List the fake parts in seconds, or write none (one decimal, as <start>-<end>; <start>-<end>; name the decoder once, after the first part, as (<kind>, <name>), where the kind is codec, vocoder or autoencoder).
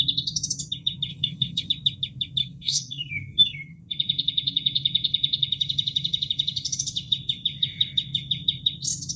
1.1-1.7 (codec, SNAC); 2.4-3.8